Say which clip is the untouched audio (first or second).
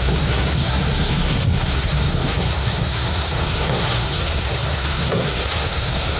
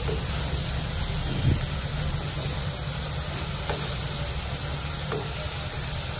second